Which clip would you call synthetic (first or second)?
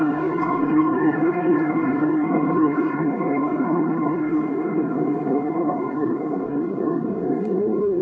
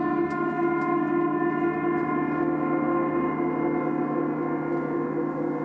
first